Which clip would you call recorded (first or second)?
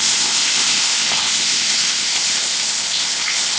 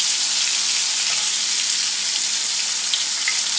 second